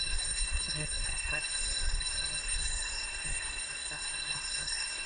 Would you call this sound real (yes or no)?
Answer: no